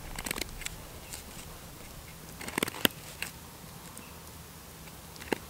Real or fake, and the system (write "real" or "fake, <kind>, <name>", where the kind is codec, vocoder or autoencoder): real